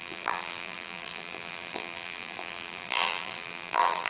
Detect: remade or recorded remade